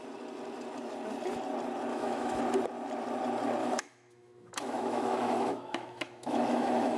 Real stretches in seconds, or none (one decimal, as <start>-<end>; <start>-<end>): 0.0-1.9; 2.4-3.6